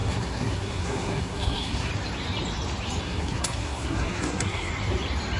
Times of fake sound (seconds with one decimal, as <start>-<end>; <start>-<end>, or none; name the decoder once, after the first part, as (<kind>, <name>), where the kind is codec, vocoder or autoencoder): 0.0-1.9 (codec, SNAC); 3.0-4.7